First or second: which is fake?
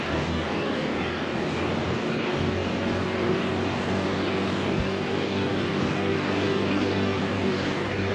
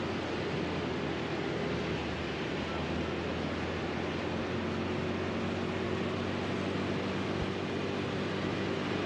first